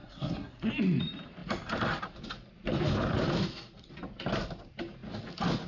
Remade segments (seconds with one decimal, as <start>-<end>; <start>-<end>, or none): 0.0-0.7